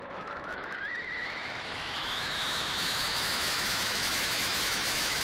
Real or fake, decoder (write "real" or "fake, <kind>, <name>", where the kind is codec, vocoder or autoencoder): fake, autoencoder, DAC-VAE